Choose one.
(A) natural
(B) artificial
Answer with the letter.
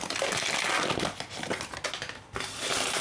A